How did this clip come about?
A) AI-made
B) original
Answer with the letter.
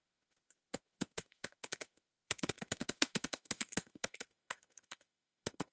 A